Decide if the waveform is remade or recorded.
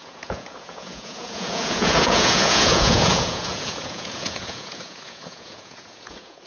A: remade